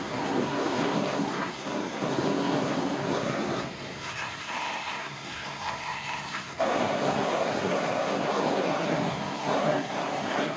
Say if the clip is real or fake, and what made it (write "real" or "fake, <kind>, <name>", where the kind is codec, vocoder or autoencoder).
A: fake, codec, SNAC